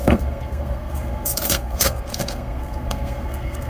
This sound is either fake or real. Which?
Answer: fake